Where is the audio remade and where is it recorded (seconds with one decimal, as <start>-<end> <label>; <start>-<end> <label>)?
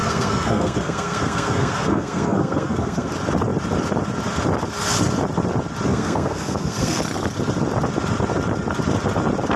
0.0-3.1 remade; 3.1-5.9 recorded; 5.9-7.0 remade; 7.0-9.6 recorded